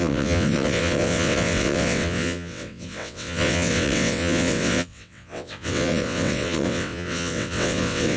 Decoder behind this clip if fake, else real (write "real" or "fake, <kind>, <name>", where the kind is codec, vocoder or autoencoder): fake, vocoder, WaveNeXt